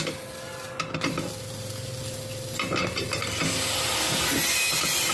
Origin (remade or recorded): recorded